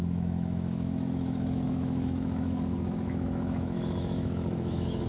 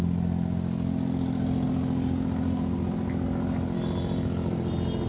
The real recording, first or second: second